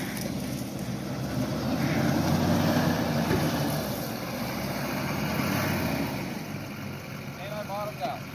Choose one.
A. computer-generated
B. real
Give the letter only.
B